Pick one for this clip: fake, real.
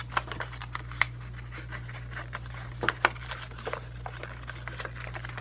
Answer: real